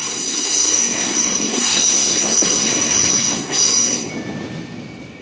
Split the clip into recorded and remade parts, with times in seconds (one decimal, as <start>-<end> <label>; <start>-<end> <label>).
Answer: 0.0-4.1 remade; 4.1-5.2 recorded